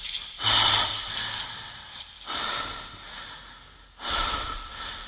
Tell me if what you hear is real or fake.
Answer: real